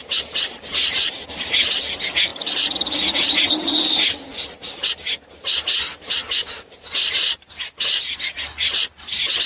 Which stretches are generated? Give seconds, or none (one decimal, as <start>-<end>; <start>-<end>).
none